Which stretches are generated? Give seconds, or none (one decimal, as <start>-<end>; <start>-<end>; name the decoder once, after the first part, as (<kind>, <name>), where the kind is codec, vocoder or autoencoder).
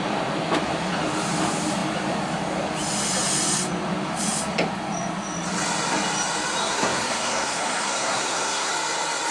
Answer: 6.6-8.7 (codec, SNAC)